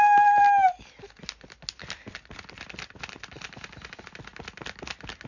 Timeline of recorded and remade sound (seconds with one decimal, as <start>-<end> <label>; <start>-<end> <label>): 0.0-5.3 recorded